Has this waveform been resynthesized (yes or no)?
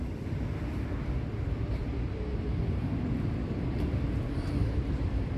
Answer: no